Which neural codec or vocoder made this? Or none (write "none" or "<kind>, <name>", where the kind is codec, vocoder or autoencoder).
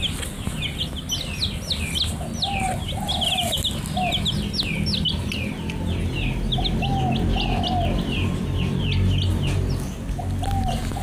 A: none